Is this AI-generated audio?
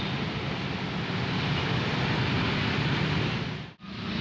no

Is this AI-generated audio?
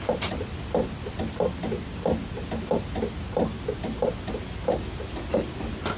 no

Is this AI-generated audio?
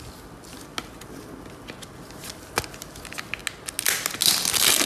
no